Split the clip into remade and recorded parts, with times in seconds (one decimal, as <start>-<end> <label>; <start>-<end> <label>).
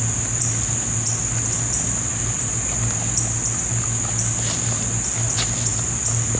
0.0-6.4 recorded